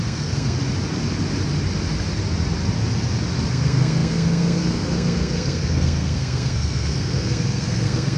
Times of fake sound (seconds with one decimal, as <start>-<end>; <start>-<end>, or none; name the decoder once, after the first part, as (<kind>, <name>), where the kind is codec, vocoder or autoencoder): 0.0-0.6 (codec, SNAC); 3.5-8.2

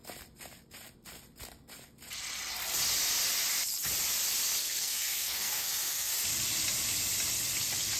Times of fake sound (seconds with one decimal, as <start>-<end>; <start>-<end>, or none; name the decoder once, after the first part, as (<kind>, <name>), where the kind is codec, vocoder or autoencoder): 4.6-6.1 (codec, SNAC)

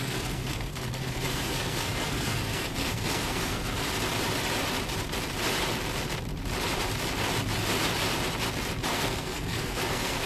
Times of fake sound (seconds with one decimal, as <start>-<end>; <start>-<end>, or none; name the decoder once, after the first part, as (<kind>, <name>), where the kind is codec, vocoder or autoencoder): 0.0-3.7 (codec, SNAC); 8.9-10.3